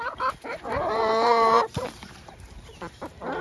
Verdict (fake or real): fake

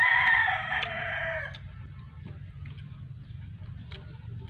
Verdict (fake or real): real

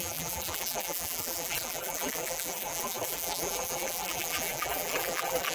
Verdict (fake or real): fake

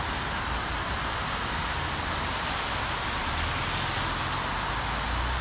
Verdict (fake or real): real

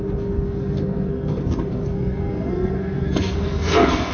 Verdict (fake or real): fake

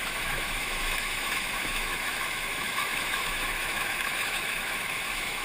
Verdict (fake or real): fake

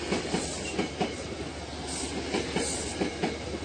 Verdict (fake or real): real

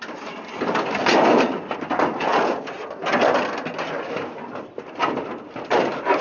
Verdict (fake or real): real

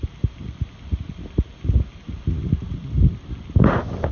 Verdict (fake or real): real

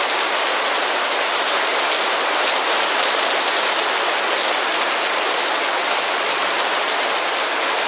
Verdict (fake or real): real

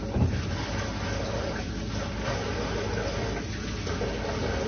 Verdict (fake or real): real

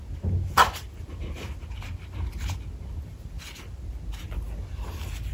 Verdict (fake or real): real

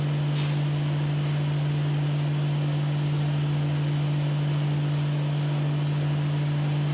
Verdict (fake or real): real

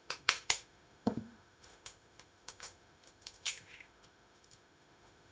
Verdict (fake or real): fake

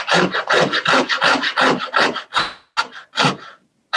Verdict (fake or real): real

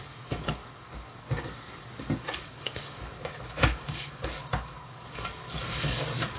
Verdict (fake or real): fake